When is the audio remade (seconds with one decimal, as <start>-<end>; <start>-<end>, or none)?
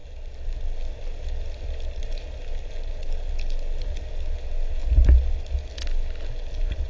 none